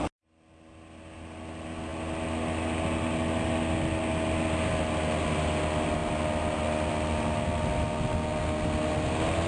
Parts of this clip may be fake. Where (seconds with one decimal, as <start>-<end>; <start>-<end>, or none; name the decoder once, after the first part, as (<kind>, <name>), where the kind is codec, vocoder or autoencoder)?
none